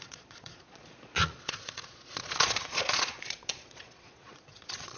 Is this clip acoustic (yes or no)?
no